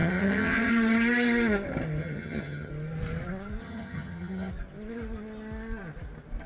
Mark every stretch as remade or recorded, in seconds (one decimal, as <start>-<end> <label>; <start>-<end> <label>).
0.0-0.7 remade; 0.7-2.0 recorded; 2.0-2.7 remade; 2.7-3.6 recorded; 3.6-4.5 remade; 4.5-6.5 recorded